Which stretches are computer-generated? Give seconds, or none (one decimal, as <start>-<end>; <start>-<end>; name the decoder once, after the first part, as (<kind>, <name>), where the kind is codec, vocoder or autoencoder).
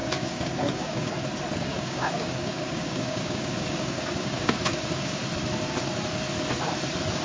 0.0-1.1 (codec, DAC); 1.6-5.2